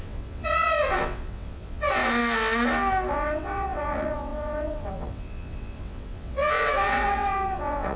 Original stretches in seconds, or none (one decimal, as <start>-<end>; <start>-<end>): 2.0-3.1